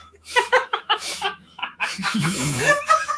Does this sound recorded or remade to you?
remade